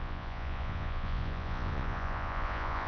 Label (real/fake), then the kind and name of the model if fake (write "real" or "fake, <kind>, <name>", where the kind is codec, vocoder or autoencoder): fake, vocoder, Vocos